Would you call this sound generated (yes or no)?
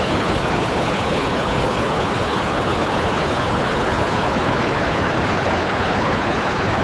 yes